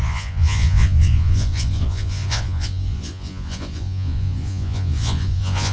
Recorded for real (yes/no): no